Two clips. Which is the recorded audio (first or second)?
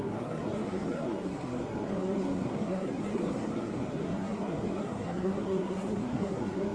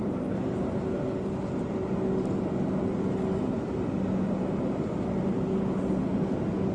second